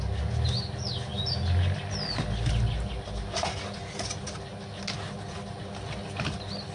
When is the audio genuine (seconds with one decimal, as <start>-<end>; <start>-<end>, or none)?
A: 0.0-6.7